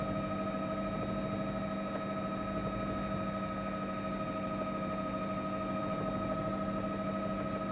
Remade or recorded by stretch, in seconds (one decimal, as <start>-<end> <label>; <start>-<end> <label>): 0.0-7.7 recorded